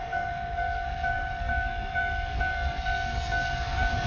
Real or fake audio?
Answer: fake